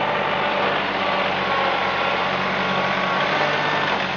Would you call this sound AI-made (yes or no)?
no